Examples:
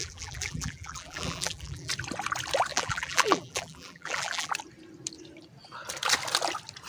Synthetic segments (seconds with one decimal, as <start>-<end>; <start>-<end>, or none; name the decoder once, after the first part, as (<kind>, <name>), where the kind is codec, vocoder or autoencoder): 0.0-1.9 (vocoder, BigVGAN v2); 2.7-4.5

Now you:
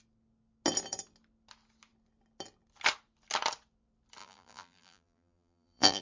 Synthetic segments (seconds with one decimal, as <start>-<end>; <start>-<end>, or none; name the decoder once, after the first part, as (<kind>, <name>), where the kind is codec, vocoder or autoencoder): 4.2-6.0 (vocoder, BigVGAN v2)

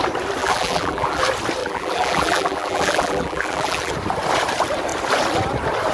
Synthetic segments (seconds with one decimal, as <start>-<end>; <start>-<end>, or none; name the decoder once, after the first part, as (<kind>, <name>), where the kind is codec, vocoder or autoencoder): 0.4-1.2 (vocoder, BigVGAN v2); 1.6-3.9

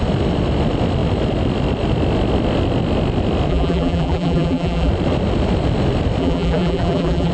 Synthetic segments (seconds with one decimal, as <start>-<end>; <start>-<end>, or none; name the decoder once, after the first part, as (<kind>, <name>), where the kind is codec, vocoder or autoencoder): 3.5-4.9 (vocoder, BigVGAN v2); 6.2-7.3